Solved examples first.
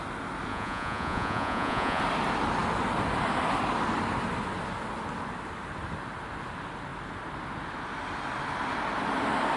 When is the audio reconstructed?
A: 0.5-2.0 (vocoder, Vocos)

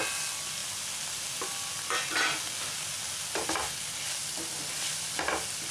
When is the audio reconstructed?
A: 4.2-4.9 (vocoder, BigVGAN v2)

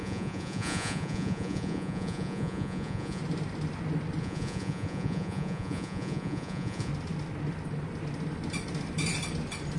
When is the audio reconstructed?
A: 0.0-3.2 (vocoder, Vocos); 4.2-6.9

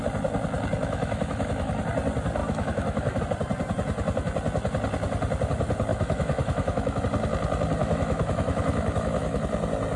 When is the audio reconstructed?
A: 0.8-1.8 (autoencoder, DAC-VAE); 2.4-3.2; 5.9-7.0; 7.8-9.4

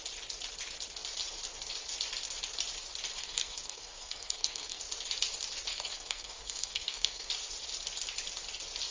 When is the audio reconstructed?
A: 3.2-4.8 (codec, SNAC); 5.7-7.3

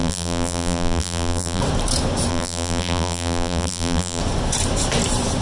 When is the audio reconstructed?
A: 0.0-1.6 (vocoder, BigVGAN v2); 2.3-4.2

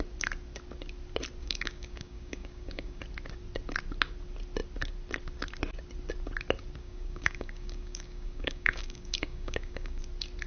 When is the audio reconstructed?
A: 1.4-3.0 (codec, DAC); 6.8-10.0

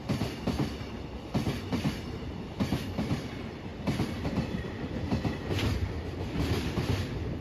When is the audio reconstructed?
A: 0.0-7.4 (vocoder, BigVGAN v2)